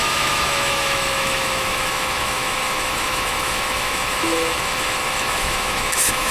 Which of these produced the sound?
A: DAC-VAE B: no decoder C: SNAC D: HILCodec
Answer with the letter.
A